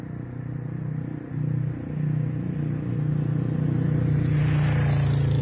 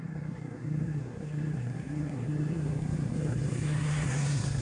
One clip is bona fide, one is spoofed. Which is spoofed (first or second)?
second